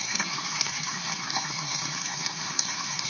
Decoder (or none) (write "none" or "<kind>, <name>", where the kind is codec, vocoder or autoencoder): codec, SNAC